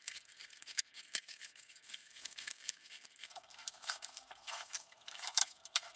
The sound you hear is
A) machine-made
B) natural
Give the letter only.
A